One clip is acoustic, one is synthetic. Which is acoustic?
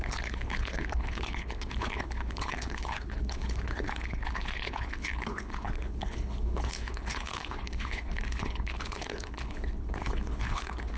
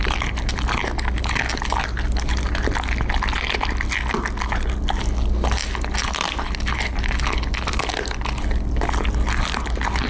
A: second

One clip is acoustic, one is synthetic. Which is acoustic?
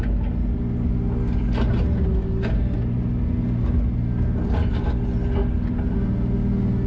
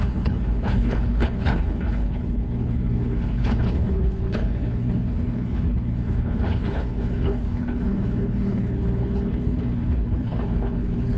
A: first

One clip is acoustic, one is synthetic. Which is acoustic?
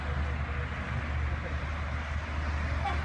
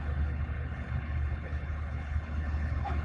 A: first